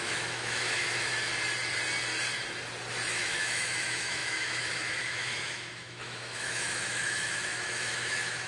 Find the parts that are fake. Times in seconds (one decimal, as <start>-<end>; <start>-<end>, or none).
0.0-1.3; 3.1-8.5